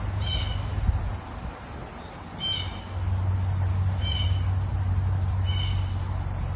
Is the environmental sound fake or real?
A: real